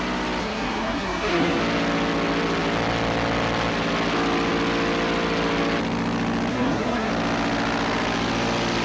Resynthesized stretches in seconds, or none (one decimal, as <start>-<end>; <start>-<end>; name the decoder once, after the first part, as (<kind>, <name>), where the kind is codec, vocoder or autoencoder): 0.4-1.6 (codec, SNAC); 6.5-7.1